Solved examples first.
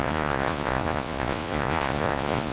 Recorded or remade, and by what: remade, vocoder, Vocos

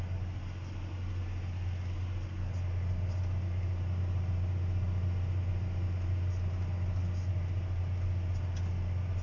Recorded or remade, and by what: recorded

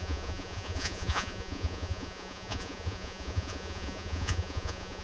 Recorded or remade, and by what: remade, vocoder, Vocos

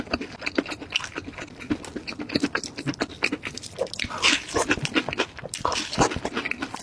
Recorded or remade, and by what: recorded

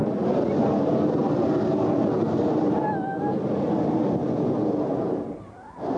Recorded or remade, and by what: recorded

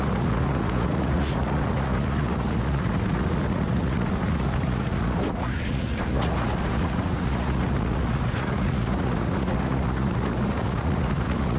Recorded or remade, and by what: remade, vocoder, Vocos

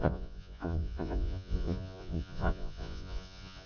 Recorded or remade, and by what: remade, vocoder, Vocos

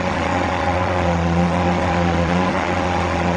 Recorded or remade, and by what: remade, vocoder, Vocos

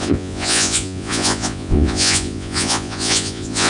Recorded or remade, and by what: remade, vocoder, Vocos